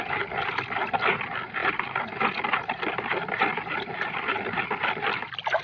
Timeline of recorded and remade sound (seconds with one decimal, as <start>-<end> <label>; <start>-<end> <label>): 0.0-5.6 recorded